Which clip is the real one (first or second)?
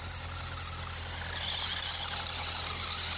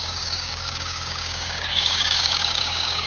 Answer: first